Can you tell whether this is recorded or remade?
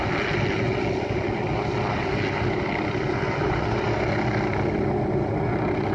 recorded